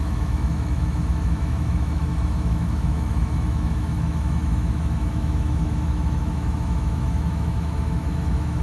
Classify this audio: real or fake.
fake